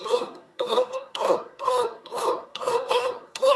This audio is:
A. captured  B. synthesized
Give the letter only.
B